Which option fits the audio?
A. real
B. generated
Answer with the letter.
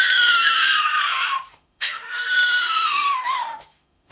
B